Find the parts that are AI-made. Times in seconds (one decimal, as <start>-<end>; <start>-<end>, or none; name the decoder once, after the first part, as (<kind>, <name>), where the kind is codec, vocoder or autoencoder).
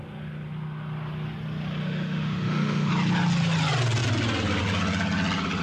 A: 1.8-2.9 (autoencoder, DAC-VAE)